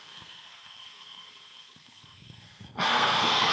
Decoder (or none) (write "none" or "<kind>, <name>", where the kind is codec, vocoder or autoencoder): codec, SNAC